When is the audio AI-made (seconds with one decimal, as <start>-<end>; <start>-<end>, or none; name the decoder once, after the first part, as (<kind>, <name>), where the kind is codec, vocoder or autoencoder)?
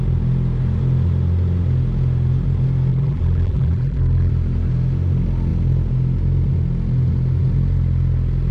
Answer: 2.9-4.3 (vocoder, BigVGAN v2)